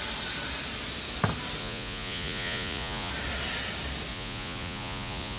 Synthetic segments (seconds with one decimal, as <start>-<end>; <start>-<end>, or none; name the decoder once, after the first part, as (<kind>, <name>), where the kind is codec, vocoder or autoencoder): 1.6-3.1 (vocoder, Vocos); 4.1-5.4